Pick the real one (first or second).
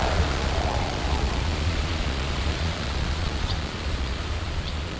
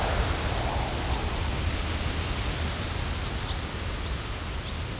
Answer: second